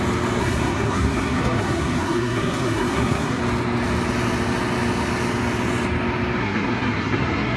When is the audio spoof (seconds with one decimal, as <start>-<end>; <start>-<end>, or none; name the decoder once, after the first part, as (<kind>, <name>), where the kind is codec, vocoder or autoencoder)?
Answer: 0.4-3.4 (codec, SNAC); 6.4-7.6